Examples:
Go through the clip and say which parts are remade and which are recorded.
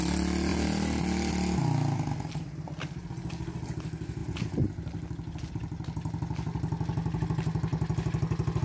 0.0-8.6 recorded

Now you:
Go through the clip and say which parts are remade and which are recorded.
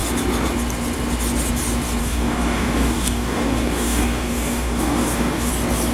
0.0-2.0 recorded; 2.0-5.5 remade; 5.5-5.9 recorded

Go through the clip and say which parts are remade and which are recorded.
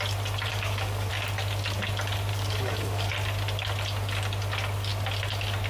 0.0-0.5 recorded; 0.5-1.1 remade; 1.1-2.3 recorded; 2.3-3.1 remade; 3.1-5.7 recorded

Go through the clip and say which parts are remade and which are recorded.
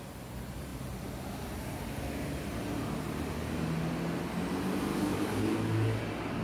0.0-4.9 recorded; 4.9-6.0 remade; 6.0-6.4 recorded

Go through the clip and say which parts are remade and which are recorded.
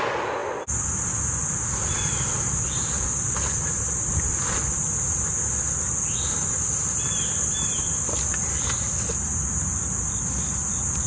0.0-11.1 recorded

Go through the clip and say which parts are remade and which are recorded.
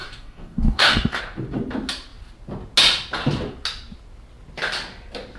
0.0-1.2 remade; 1.2-5.4 recorded